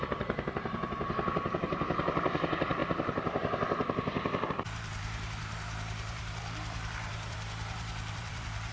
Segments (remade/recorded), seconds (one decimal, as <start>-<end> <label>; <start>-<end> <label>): 0.0-8.7 remade